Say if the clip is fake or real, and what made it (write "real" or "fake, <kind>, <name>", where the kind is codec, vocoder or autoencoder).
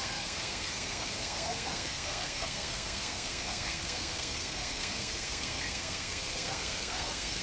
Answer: fake, codec, SNAC